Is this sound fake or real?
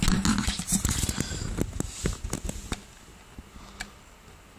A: real